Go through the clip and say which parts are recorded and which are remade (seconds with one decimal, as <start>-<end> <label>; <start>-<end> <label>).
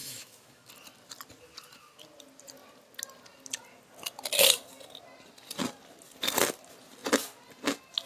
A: 0.0-0.7 remade; 0.7-8.1 recorded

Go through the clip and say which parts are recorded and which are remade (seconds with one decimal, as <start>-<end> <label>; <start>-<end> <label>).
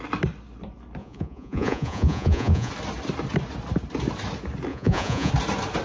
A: 0.0-1.0 recorded; 1.0-2.7 remade; 2.7-4.7 recorded; 4.7-5.3 remade; 5.3-5.8 recorded